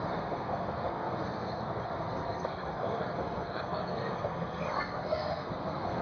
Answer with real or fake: fake